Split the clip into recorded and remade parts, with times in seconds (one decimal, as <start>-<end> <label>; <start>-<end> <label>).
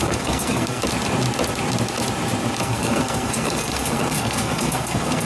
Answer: 0.0-0.8 remade; 0.8-2.6 recorded; 2.6-5.3 remade